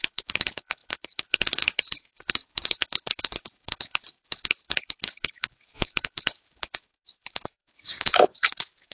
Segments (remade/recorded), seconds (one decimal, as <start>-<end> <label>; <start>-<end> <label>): 0.0-8.9 remade